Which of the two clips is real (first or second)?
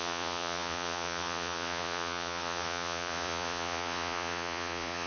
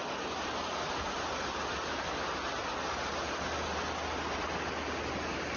second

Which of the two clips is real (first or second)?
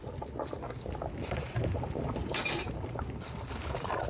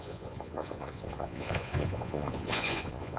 first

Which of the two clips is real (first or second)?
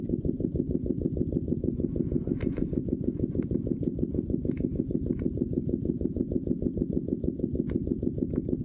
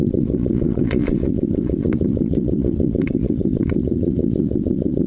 first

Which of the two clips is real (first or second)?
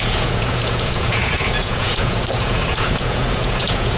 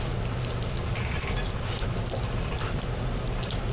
second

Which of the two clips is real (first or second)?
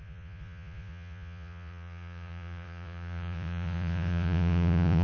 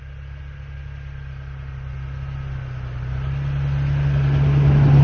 second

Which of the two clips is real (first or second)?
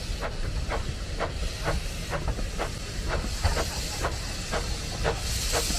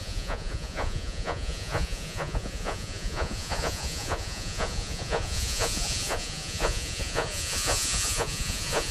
first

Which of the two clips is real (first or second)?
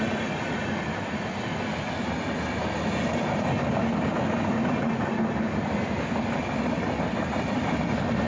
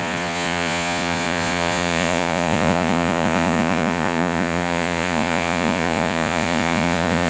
first